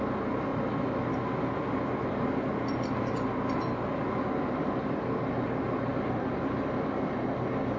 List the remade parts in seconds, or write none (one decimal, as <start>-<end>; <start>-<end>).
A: 5.9-6.7